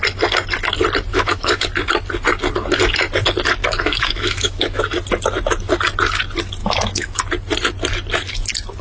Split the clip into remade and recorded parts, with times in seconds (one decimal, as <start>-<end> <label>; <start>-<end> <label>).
0.0-1.1 recorded; 1.1-1.7 remade; 1.7-3.6 recorded; 3.6-4.8 remade; 4.8-6.6 recorded; 6.6-7.2 remade; 7.2-8.8 recorded